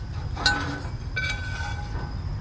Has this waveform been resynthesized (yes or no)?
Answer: no